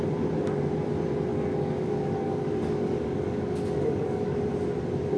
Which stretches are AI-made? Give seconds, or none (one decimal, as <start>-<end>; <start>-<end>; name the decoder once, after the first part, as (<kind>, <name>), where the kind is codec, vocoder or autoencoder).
1.3-4.4 (codec, DAC)

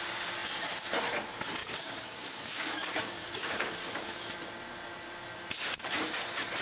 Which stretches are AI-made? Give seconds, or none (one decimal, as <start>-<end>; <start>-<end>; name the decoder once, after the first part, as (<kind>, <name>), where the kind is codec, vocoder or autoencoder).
1.6-4.2 (codec, DAC)